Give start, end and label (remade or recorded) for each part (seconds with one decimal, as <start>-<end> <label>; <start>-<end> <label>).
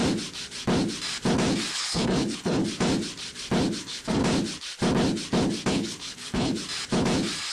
0.0-1.7 recorded; 1.7-2.6 remade; 2.6-3.8 recorded; 3.8-4.2 remade; 4.2-5.7 recorded; 5.7-6.5 remade; 6.5-7.5 recorded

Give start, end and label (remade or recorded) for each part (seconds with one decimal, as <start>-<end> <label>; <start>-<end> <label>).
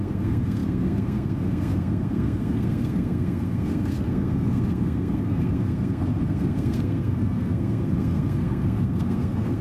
0.0-9.6 remade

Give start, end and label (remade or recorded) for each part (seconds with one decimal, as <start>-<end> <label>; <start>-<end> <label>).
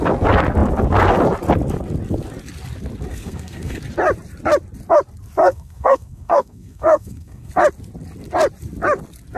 0.0-3.1 recorded; 3.1-3.8 remade; 3.8-5.4 recorded; 5.4-7.5 remade; 7.5-9.4 recorded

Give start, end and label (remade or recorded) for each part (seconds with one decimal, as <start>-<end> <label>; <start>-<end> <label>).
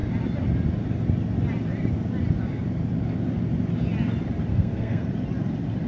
0.0-4.5 recorded; 4.5-5.1 remade; 5.1-5.9 recorded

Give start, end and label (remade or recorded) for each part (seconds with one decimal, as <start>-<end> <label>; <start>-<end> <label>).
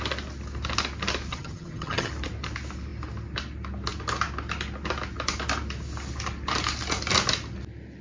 0.0-1.3 recorded; 1.3-2.1 remade; 2.1-8.0 recorded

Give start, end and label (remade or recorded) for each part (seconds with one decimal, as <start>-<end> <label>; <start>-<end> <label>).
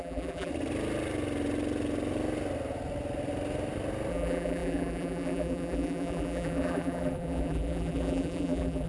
0.0-0.5 remade; 0.5-4.1 recorded; 4.1-8.9 remade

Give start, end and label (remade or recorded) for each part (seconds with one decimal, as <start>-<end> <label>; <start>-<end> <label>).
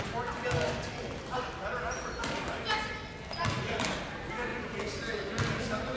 0.0-6.0 recorded